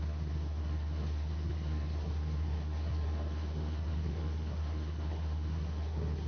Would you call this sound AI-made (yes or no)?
yes